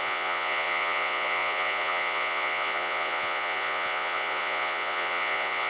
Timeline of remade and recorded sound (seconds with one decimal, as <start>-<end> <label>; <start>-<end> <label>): 0.0-5.7 remade